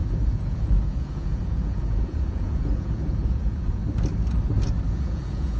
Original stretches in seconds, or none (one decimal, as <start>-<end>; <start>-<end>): 3.8-4.9